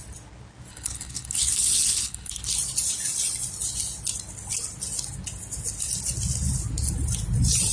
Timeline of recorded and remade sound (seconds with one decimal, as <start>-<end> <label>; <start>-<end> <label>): 0.0-0.7 recorded; 0.7-2.5 remade; 2.5-7.7 recorded